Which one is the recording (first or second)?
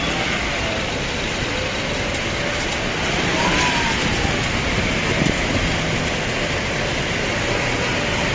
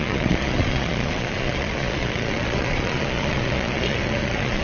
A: first